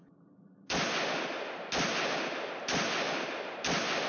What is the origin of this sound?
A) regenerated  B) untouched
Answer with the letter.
B